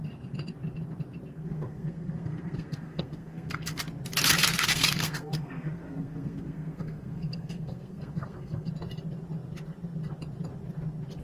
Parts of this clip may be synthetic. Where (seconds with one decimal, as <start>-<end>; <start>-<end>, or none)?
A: 1.3-3.8; 4.7-8.7